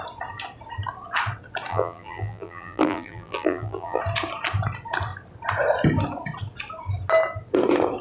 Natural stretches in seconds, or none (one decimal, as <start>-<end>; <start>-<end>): 0.0-1.7; 4.0-8.0

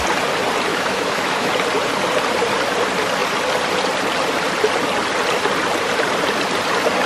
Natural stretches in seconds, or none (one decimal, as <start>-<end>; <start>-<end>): 0.0-0.7; 1.5-7.1

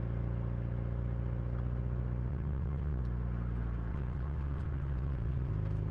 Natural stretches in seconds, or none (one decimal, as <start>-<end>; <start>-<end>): 0.0-2.3; 3.0-3.9; 5.5-5.9